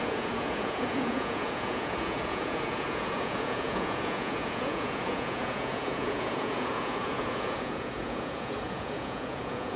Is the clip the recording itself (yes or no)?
no